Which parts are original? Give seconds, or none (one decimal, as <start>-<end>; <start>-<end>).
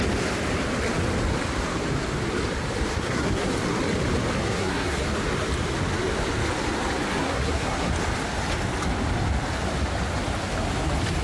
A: 0.0-2.9; 3.5-4.4; 5.0-7.1; 7.9-11.2